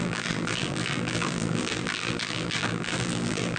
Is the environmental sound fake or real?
fake